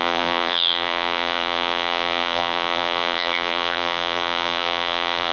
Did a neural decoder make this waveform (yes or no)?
yes